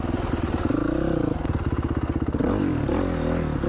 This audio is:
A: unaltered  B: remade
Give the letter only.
A